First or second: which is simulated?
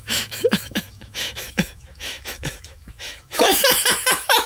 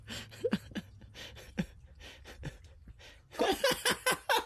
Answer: first